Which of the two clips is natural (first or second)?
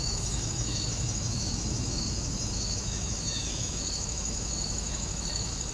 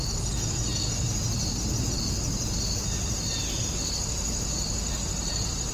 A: second